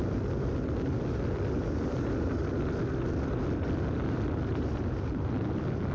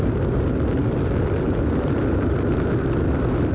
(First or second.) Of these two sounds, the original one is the first